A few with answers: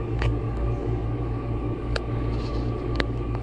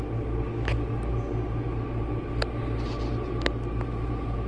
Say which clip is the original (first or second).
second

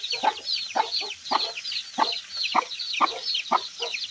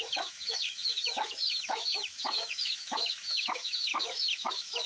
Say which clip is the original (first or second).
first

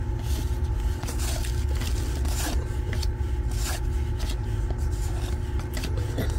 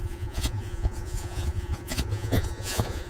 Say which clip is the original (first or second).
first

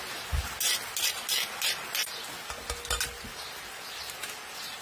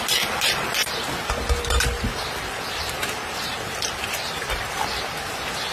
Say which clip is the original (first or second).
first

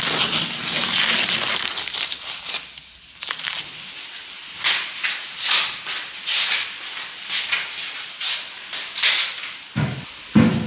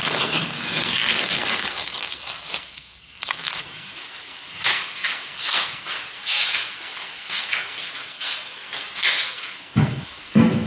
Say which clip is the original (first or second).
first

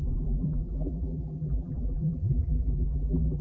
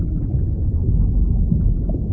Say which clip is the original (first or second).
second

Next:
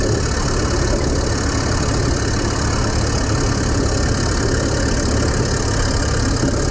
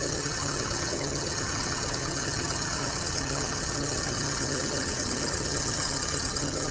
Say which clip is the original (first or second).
first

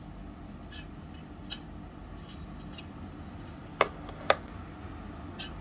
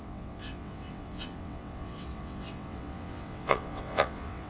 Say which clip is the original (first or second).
first